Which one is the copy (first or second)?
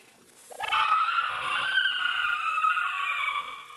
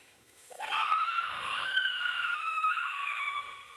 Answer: second